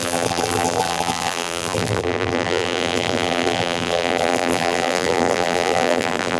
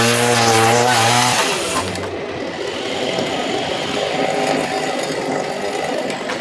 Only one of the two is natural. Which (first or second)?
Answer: second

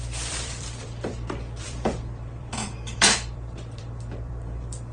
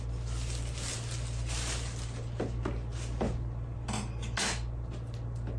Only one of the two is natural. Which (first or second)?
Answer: second